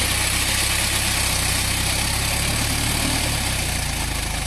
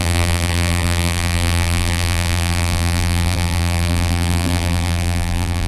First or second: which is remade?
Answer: second